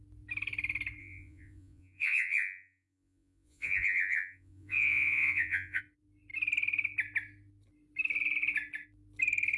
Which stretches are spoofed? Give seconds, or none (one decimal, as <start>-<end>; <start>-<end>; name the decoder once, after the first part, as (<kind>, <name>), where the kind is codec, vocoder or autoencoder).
1.0-5.8 (vocoder, Vocos)